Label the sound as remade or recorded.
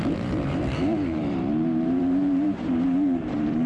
remade